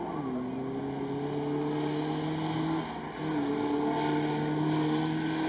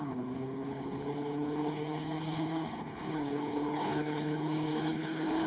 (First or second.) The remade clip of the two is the second